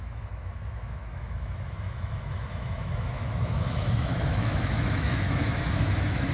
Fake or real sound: fake